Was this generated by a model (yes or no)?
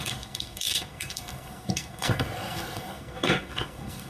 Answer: yes